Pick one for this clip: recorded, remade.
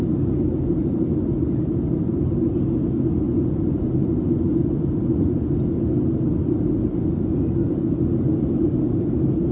recorded